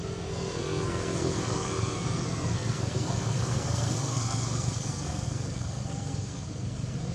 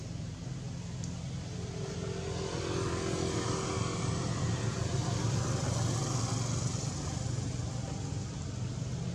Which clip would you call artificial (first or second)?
first